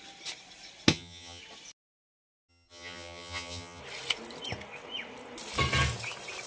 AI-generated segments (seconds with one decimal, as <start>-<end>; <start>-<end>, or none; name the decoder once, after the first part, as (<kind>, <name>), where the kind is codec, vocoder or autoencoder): 0.9-1.4 (vocoder, HiFi-GAN); 2.5-3.8